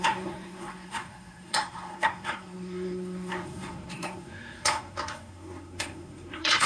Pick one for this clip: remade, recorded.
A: remade